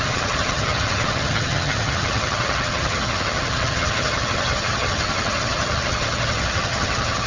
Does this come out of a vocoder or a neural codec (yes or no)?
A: yes